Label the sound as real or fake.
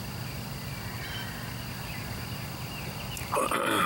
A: real